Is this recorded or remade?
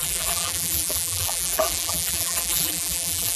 remade